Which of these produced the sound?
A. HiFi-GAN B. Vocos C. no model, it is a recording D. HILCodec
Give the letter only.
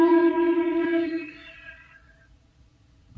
B